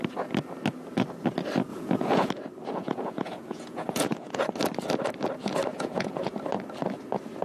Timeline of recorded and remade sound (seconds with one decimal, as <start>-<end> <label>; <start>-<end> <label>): 0.0-1.7 recorded; 1.7-2.3 remade; 2.3-2.8 recorded; 2.8-4.5 remade; 4.5-5.7 recorded; 5.7-6.3 remade; 6.3-7.4 recorded